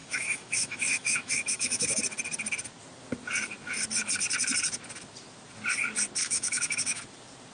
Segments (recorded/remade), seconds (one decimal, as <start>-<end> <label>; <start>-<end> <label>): 0.0-2.0 remade; 2.0-6.2 recorded; 6.2-7.0 remade; 7.0-7.5 recorded